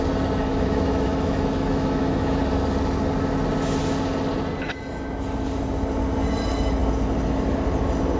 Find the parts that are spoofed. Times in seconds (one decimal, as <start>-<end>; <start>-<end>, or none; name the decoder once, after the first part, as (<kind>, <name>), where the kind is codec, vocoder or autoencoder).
0.5-2.4 (autoencoder, DAC-VAE)